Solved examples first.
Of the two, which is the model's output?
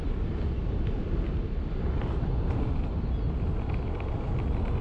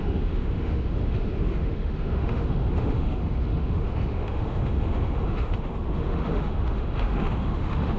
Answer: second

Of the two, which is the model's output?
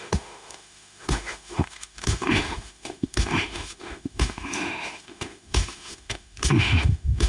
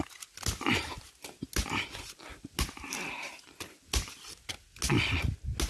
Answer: first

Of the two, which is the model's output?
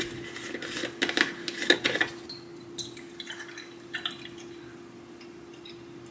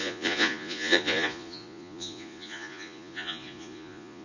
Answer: second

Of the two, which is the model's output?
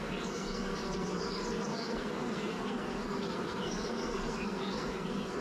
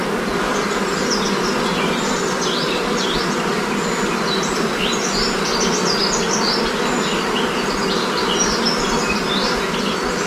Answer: first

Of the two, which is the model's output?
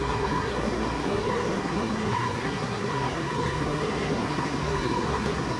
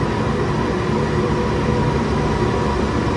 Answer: first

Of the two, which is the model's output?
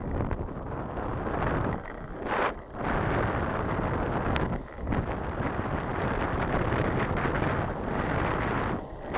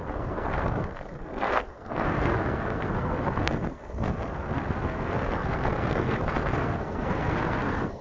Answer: second